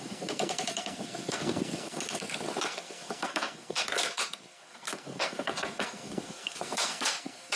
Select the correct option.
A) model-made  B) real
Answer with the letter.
A